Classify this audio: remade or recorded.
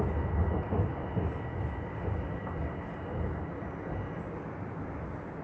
recorded